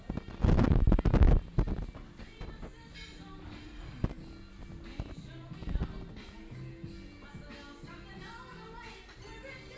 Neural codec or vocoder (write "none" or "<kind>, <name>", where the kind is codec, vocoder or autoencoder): none